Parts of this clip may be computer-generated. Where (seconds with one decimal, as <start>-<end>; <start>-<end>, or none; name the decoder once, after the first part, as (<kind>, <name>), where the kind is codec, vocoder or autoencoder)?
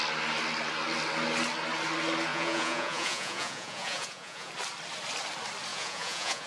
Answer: 2.3-4.5 (vocoder, Vocos); 5.7-6.5